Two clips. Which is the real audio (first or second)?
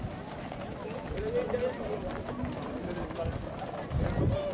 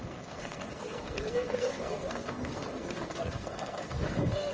first